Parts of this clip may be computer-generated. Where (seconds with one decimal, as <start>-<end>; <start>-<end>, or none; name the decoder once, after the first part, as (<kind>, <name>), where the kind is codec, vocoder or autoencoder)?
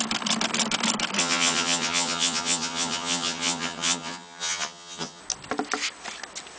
1.2-5.2 (vocoder, HiFi-GAN)